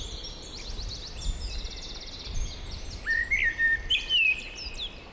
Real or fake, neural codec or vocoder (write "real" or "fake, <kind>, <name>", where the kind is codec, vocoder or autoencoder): real